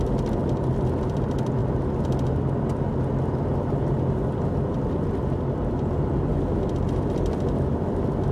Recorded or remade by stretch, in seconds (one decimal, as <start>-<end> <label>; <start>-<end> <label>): 0.0-8.3 recorded